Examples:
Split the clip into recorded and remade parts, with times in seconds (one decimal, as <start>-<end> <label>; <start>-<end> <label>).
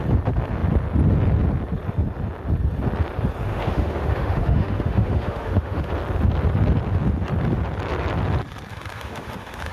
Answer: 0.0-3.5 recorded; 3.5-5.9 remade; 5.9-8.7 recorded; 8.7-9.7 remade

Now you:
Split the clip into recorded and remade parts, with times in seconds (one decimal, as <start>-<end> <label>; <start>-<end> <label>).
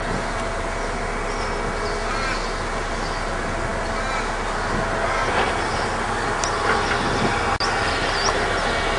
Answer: 0.0-9.0 recorded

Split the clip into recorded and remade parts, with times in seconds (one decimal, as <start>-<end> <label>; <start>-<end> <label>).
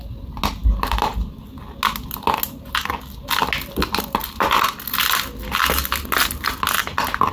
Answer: 0.0-7.3 recorded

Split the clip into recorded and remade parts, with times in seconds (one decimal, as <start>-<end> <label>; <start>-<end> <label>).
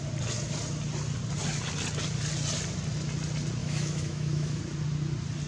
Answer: 0.0-3.6 recorded; 3.6-4.6 remade; 4.6-5.5 recorded